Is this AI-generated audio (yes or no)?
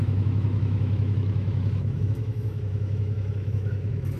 yes